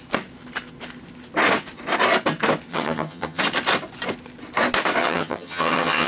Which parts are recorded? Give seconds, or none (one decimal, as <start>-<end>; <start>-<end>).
0.0-2.7; 3.4-5.0